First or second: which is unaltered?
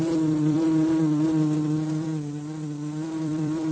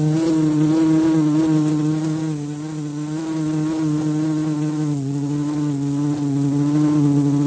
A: second